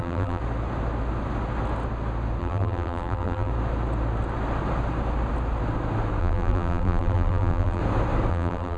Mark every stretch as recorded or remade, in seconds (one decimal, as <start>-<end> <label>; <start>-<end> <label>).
0.0-0.4 remade; 0.4-2.4 recorded; 2.4-3.5 remade; 3.5-6.2 recorded; 6.2-7.8 remade; 7.8-8.3 recorded; 8.3-8.8 remade